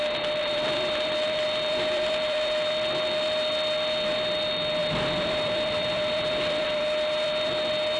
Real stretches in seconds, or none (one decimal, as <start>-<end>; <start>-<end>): 0.0-0.4; 2.7-4.8; 7.5-8.0

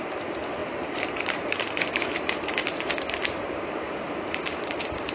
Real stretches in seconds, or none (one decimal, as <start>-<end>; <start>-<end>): none

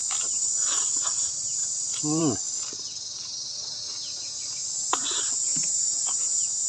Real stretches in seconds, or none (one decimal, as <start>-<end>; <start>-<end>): 1.1-1.6; 2.2-6.7